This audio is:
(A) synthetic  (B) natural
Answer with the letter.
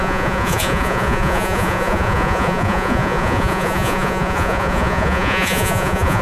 A